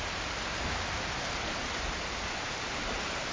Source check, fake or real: real